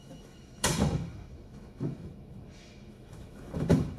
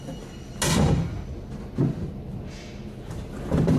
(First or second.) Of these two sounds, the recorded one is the second